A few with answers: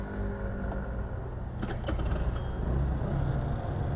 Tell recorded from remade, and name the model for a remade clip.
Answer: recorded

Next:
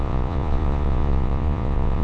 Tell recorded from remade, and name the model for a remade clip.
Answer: remade, vocoder, Vocos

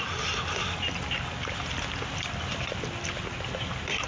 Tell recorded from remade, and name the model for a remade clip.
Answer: recorded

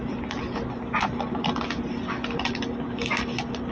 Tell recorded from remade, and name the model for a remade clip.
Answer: recorded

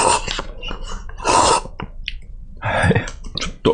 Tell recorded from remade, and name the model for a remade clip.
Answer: recorded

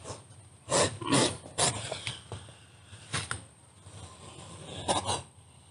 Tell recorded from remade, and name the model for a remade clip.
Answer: recorded